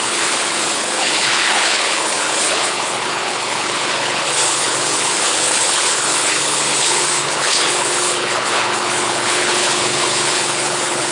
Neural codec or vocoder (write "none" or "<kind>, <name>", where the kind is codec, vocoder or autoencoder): codec, HILCodec